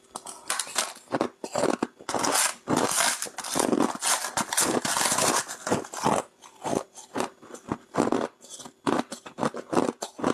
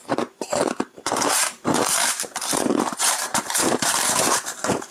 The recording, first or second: first